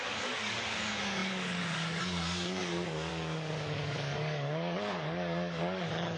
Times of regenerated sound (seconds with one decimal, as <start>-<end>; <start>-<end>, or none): 0.0-6.2